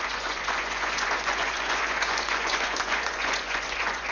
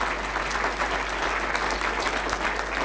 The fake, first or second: first